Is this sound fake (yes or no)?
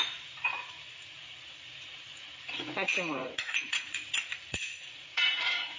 yes